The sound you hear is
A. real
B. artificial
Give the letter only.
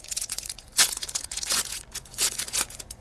B